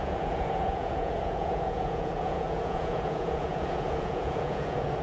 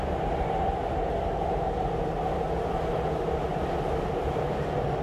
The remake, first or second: first